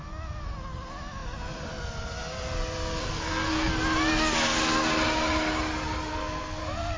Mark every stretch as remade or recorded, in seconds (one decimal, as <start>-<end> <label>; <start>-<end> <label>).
0.0-3.0 recorded; 3.0-3.7 remade; 3.7-6.1 recorded; 6.1-6.6 remade; 6.6-7.0 recorded